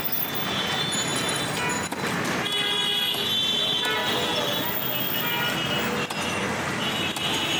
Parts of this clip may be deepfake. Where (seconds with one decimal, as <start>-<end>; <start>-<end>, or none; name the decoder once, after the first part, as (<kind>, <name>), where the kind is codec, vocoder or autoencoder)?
none

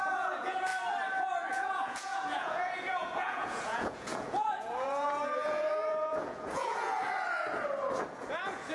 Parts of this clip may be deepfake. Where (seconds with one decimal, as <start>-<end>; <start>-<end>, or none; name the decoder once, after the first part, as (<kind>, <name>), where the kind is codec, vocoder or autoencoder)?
0.0-0.7 (vocoder, Vocos); 1.5-7.0; 8.1-8.7